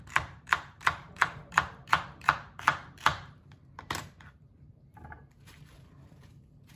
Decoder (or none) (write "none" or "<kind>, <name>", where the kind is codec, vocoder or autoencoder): vocoder, BigVGAN v2